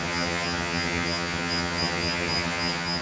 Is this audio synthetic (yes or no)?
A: yes